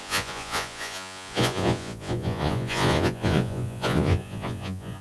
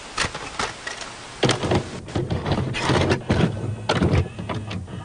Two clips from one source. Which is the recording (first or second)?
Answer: second